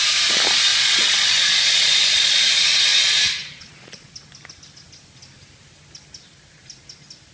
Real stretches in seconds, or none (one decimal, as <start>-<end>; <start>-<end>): 0.0-0.7; 2.4-2.9; 4.1-7.3